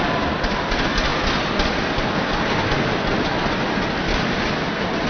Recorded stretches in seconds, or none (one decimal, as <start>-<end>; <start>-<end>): 0.0-5.1